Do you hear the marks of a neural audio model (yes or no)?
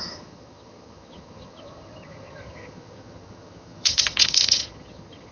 yes